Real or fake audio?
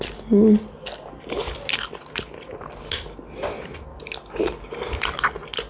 real